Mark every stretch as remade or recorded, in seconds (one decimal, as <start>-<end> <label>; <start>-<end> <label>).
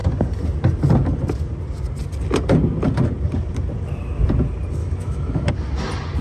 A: 0.0-4.8 recorded; 4.8-5.5 remade; 5.5-6.2 recorded